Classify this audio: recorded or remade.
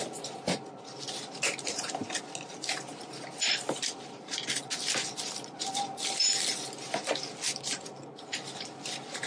recorded